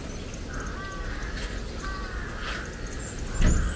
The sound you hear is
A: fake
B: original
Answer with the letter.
B